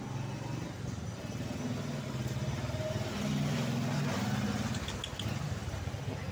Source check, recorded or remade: recorded